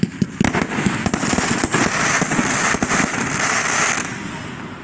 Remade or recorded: recorded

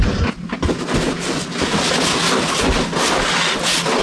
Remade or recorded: recorded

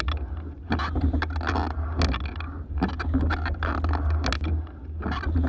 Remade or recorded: recorded